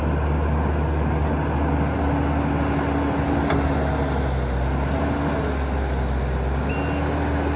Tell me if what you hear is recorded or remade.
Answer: recorded